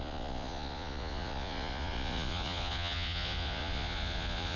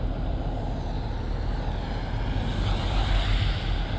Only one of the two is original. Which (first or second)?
second